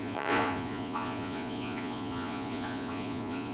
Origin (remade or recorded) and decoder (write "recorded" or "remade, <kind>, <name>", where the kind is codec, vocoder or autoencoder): remade, vocoder, Vocos